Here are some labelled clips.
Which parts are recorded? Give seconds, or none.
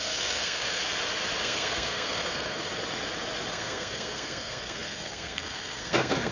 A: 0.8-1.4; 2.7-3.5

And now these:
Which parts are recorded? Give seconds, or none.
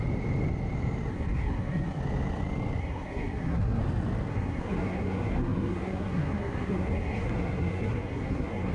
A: 0.0-1.1; 2.0-2.8; 3.8-4.3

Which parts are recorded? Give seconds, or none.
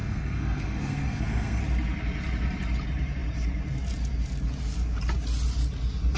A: 1.6-6.2